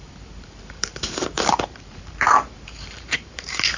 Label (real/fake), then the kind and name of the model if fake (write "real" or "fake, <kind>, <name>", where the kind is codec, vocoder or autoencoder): fake, vocoder, BigVGAN v2